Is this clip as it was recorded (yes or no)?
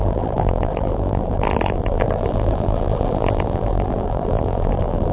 no